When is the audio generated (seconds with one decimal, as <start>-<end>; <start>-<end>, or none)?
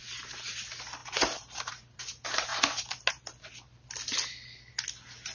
none